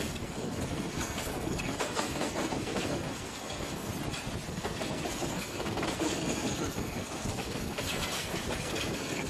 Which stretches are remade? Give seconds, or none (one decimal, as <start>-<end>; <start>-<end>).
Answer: 0.0-3.9; 4.5-9.3